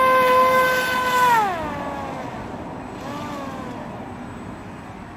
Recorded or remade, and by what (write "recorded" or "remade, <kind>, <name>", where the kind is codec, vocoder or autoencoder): recorded